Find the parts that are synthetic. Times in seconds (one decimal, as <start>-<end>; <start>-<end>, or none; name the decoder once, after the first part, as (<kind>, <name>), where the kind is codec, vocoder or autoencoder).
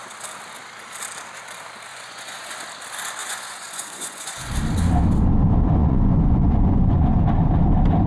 1.9-2.5 (vocoder, Vocos); 3.2-4.5; 5.8-7.2